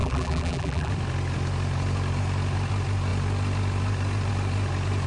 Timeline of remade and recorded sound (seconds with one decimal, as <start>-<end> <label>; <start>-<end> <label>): 0.0-0.9 remade; 0.9-5.1 recorded